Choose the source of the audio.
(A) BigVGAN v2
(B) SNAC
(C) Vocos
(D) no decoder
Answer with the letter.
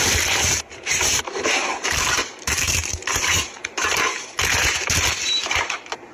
A